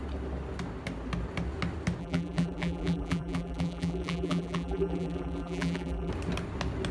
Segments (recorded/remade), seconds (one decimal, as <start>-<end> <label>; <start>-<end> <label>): 0.0-2.0 recorded; 2.0-6.1 remade; 6.1-6.9 recorded